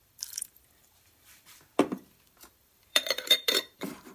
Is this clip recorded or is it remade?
remade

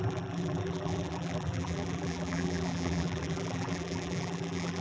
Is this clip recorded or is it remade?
remade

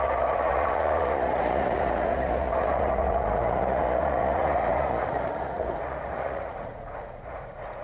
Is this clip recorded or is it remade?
remade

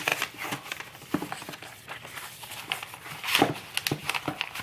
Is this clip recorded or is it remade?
recorded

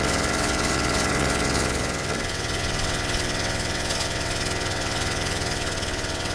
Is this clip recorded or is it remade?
remade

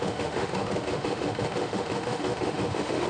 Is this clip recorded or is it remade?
remade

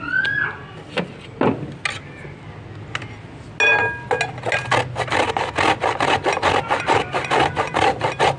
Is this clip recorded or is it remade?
recorded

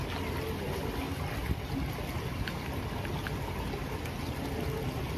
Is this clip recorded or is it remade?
recorded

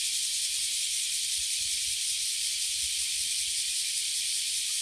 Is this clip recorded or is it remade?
remade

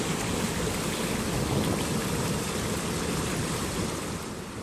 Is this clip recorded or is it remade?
remade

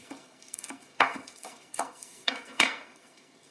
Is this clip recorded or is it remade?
remade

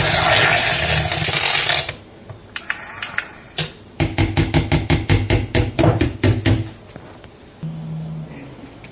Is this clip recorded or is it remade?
recorded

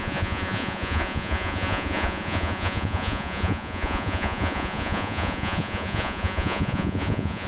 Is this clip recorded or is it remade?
remade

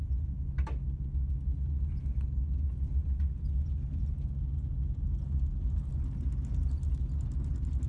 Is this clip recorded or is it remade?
recorded